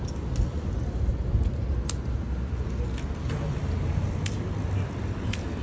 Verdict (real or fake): real